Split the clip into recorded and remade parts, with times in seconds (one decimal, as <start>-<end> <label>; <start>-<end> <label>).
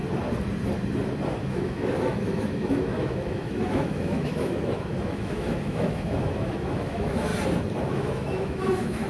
0.0-1.4 recorded; 1.4-7.3 remade; 7.3-7.9 recorded; 7.9-9.1 remade